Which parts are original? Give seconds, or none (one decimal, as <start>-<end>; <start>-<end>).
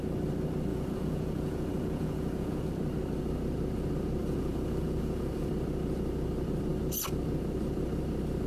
0.0-0.7; 2.7-4.2; 5.5-8.5